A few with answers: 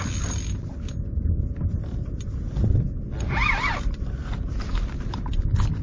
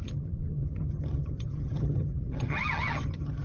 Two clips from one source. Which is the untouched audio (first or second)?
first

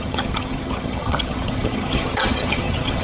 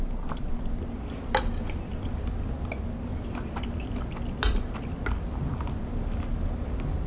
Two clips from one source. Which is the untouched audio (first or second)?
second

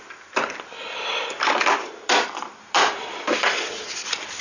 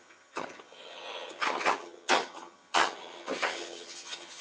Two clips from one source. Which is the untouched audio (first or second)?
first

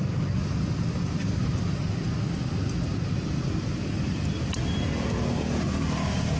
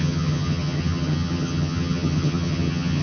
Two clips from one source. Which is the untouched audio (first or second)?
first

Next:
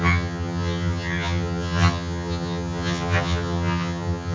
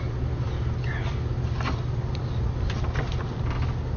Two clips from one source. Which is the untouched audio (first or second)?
second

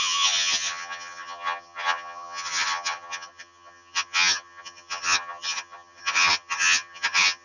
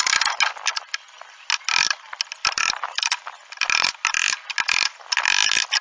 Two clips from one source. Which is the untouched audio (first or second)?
second